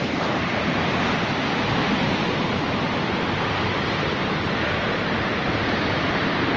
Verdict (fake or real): fake